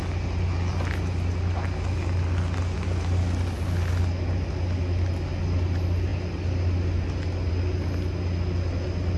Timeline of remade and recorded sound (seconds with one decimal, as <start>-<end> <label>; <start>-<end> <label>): 0.0-9.2 recorded